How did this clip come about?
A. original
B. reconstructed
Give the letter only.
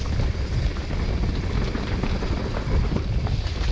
A